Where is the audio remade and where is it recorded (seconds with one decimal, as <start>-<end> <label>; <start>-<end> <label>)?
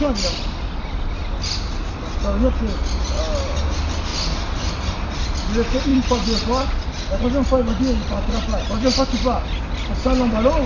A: 0.0-10.7 recorded